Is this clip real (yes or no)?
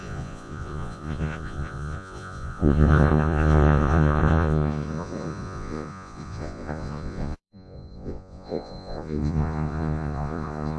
no